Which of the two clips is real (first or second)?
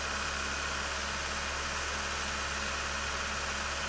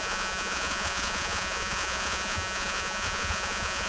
first